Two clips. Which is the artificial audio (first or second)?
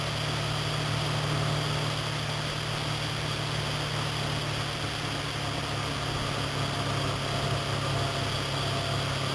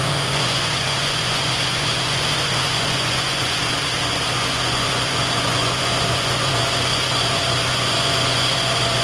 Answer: second